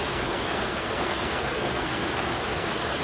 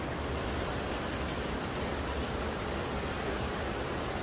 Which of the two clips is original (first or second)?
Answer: second